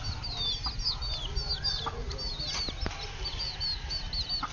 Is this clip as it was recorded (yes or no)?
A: yes